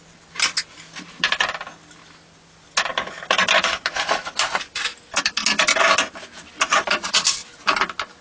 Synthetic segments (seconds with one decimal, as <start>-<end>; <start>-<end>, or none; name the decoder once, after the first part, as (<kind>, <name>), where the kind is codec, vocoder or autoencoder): none